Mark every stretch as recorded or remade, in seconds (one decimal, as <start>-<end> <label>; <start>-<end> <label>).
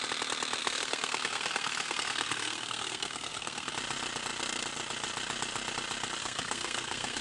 0.0-0.6 recorded; 0.6-3.7 remade; 3.7-6.2 recorded; 6.2-7.2 remade